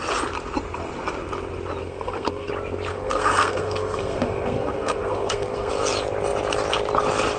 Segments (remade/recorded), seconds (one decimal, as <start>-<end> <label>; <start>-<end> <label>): 0.0-1.8 recorded; 1.8-2.5 remade; 2.5-2.9 recorded; 2.9-5.7 remade; 5.7-7.4 recorded